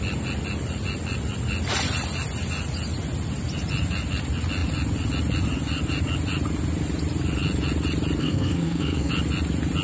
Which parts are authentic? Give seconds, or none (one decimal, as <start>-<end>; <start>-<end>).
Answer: 0.0-8.2; 9.1-9.8